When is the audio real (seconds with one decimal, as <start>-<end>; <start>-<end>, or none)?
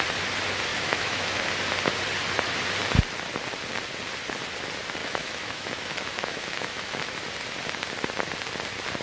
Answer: 0.0-0.7; 1.5-5.0; 7.0-9.0